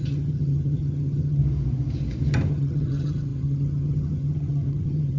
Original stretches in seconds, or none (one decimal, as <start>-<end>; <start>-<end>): 1.4-2.5